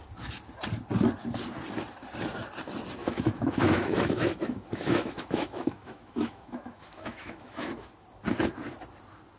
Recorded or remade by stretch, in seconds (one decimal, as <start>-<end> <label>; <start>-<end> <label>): 0.0-3.0 recorded; 3.0-7.9 remade; 7.9-9.4 recorded

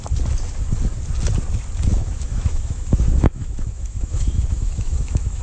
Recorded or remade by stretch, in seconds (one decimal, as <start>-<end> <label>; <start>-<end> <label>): 0.0-1.9 recorded; 1.9-5.4 remade

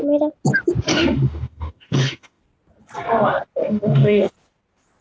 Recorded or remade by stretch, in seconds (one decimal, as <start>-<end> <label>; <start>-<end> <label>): 0.0-0.9 recorded; 0.9-2.4 remade; 2.4-3.6 recorded; 3.6-4.3 remade; 4.3-5.0 recorded

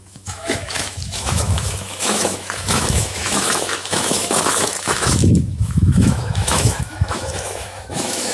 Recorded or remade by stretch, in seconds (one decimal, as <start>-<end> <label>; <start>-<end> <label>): 0.0-8.3 remade

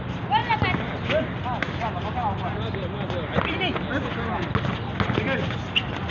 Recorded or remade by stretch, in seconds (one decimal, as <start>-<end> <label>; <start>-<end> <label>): 0.0-6.1 recorded

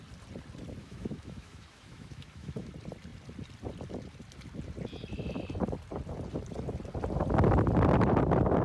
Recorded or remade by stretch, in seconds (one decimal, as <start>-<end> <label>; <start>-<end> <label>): 0.0-0.8 recorded; 0.8-2.7 remade; 2.7-8.6 recorded